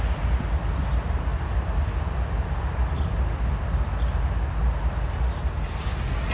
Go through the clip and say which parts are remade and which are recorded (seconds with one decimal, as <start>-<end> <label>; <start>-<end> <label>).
0.0-6.3 recorded